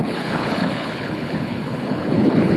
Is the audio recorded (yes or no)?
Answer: no